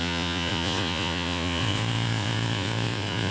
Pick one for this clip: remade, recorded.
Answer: remade